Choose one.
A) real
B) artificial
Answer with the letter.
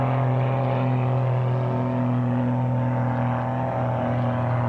A